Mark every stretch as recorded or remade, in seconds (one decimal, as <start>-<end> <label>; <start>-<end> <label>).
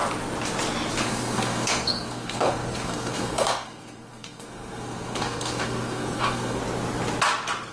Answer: 0.0-1.0 recorded; 1.0-6.6 remade; 6.6-7.7 recorded